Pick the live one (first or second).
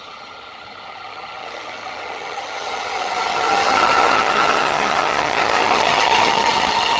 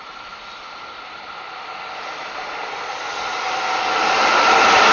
second